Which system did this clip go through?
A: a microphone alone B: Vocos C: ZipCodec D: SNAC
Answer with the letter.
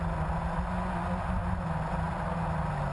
A